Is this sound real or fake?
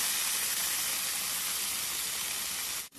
real